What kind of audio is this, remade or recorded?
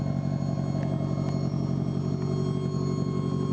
recorded